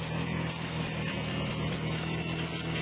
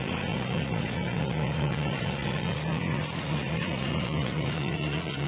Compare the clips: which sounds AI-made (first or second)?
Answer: second